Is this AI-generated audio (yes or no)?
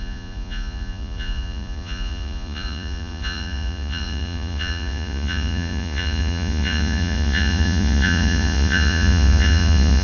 yes